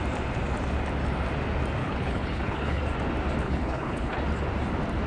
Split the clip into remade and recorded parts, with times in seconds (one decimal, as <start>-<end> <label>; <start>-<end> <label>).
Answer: 0.0-1.8 recorded; 1.8-2.8 remade; 2.8-3.4 recorded; 3.4-4.2 remade; 4.2-5.1 recorded